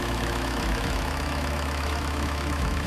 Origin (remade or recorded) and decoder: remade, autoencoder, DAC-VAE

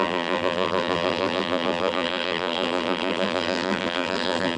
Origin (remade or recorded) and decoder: remade, vocoder, BigVGAN v2